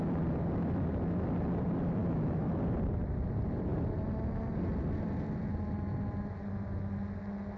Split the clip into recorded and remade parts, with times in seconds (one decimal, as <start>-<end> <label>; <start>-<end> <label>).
0.0-2.0 recorded; 2.0-2.6 remade; 2.6-7.6 recorded